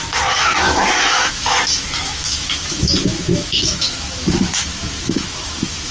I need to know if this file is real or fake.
fake